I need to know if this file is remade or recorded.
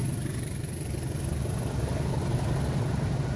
recorded